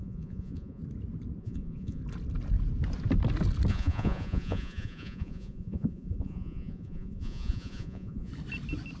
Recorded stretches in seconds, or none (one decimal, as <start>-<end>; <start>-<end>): 0.8-1.4; 2.0-3.7; 8.3-9.0